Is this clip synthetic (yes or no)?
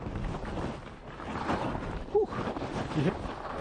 no